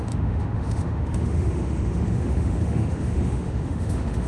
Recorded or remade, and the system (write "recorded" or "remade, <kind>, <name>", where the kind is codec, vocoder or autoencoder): remade, autoencoder, DAC-VAE